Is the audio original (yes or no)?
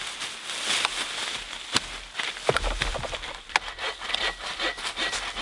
yes